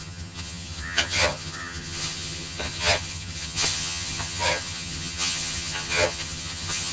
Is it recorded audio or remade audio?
remade